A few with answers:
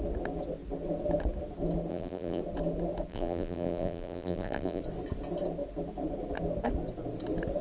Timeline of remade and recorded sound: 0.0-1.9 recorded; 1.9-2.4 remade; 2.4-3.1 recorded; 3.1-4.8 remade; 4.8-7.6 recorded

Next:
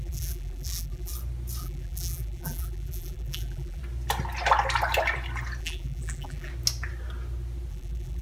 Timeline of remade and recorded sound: 0.0-1.1 remade; 1.1-1.6 recorded; 1.6-3.8 remade; 3.8-5.6 recorded; 5.6-6.5 remade; 6.5-7.7 recorded; 7.7-8.2 remade

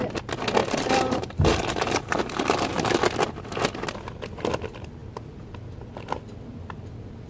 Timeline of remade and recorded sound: 0.0-0.6 recorded; 0.6-3.0 remade; 3.0-7.3 recorded

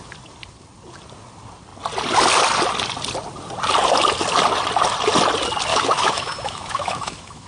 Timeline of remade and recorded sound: 0.0-5.7 recorded; 5.7-7.5 remade